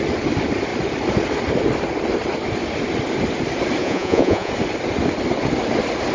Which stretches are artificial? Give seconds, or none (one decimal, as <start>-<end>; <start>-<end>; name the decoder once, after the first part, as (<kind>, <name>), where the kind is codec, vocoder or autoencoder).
3.8-4.5 (vocoder, Vocos)